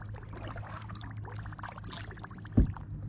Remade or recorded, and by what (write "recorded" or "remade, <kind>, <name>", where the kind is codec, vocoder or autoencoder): recorded